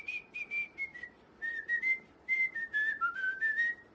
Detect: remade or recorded recorded